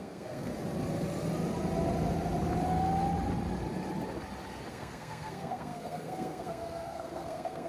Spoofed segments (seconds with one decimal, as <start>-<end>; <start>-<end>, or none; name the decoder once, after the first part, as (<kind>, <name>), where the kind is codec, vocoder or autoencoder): 0.0-0.5 (codec, SNAC); 4.7-7.7